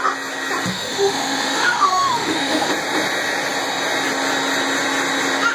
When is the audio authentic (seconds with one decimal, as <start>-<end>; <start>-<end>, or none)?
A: 0.0-0.7; 2.7-5.5